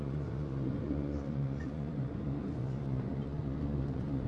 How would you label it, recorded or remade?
remade